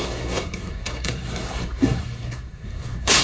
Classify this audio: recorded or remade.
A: remade